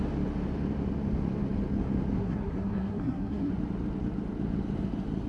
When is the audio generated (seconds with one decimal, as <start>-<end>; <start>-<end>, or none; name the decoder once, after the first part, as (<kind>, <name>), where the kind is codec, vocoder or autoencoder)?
2.2-3.5 (codec, SNAC)

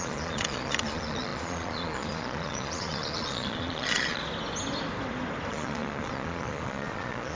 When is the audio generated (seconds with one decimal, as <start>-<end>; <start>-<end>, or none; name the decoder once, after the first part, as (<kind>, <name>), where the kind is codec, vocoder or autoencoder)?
0.0-4.2 (vocoder, Vocos); 5.5-7.4

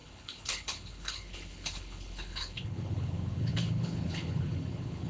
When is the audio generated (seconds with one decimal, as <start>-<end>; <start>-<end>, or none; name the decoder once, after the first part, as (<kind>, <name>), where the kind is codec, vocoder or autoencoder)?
0.0-5.1 (codec, HILCodec)

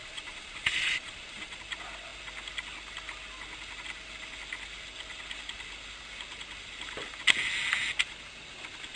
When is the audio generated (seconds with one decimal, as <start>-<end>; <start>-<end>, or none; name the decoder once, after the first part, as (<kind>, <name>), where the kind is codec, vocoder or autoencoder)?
0.0-1.6 (vocoder, Vocos)